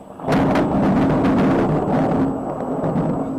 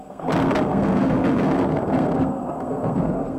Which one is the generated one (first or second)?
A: second